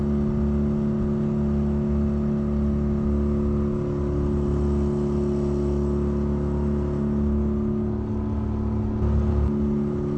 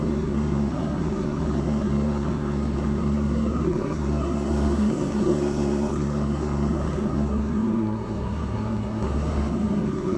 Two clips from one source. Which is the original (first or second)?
first